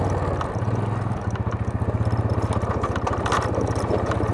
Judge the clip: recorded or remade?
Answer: recorded